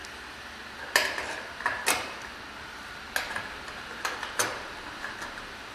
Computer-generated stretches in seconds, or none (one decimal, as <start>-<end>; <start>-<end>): 3.4-5.7